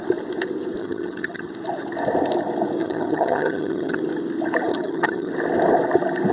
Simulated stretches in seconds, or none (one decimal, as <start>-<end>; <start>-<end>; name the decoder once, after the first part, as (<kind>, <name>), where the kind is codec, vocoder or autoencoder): 0.8-1.5 (vocoder, HiFi-GAN); 2.8-4.0; 4.7-5.3